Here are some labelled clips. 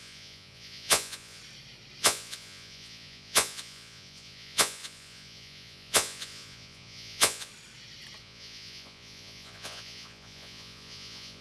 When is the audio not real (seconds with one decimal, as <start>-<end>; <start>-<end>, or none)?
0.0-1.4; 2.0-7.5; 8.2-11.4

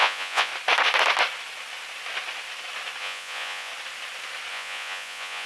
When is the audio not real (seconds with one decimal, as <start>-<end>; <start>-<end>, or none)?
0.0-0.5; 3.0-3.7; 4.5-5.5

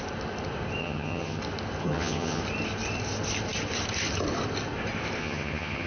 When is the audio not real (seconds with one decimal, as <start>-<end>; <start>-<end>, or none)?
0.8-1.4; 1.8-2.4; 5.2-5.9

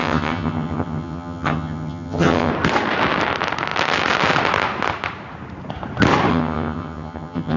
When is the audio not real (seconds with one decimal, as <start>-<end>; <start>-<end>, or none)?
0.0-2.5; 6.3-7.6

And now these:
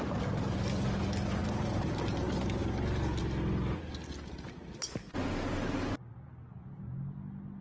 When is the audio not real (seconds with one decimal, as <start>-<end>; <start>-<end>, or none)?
none